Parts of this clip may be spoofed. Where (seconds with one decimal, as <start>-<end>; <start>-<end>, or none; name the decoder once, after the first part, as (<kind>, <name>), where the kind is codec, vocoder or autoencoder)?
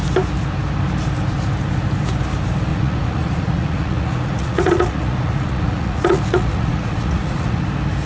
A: 2.7-7.6 (vocoder, Vocos)